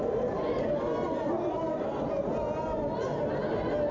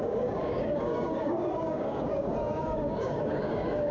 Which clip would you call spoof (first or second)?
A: second